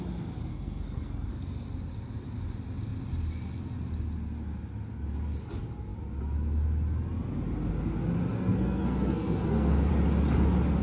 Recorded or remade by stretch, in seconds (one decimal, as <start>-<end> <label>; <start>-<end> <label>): 0.0-0.5 recorded; 0.5-1.3 remade; 1.3-8.3 recorded; 8.3-9.9 remade; 9.9-10.8 recorded